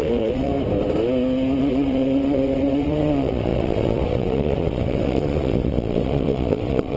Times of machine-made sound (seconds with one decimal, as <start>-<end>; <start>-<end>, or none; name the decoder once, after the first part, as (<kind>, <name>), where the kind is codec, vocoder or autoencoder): 0.0-0.5 (vocoder, WaveNeXt); 1.6-7.0

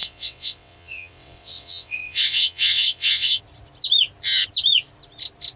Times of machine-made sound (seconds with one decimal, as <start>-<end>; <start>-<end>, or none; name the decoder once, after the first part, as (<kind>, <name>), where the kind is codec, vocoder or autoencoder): 0.0-3.4 (vocoder, WaveNeXt)

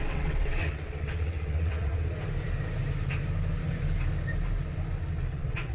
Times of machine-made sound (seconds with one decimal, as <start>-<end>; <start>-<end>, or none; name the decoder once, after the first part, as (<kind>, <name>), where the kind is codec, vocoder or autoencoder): 0.0-1.9 (vocoder, WaveNeXt); 5.3-5.7

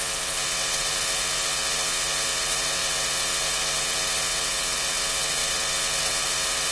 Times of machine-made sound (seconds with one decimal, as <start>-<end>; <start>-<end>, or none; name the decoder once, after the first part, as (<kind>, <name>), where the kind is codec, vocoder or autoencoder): 0.0-6.7 (vocoder, WaveNeXt)

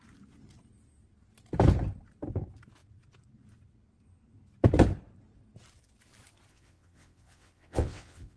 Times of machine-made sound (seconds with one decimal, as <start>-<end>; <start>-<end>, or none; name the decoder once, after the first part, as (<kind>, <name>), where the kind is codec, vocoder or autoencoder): 6.5-8.4 (vocoder, WaveNeXt)

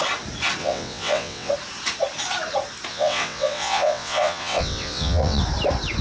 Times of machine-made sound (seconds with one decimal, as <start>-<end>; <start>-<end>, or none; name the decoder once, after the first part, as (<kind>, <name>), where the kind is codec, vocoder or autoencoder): 0.6-1.5 (vocoder, WaveNeXt); 2.9-5.4

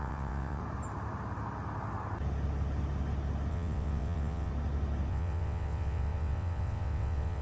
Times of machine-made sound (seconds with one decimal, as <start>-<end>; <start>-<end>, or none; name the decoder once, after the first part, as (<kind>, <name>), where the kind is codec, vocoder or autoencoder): 0.0-0.6 (vocoder, WaveNeXt); 3.5-4.5; 5.1-7.4

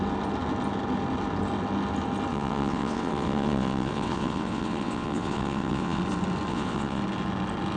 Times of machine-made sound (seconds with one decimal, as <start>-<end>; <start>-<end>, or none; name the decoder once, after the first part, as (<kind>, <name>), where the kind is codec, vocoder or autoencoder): 2.3-6.0 (vocoder, WaveNeXt); 6.5-7.0